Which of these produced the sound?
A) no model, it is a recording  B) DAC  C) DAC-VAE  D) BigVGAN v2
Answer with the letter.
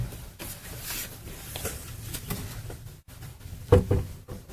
A